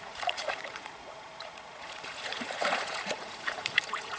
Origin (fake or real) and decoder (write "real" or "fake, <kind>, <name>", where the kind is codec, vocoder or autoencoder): fake, vocoder, Vocos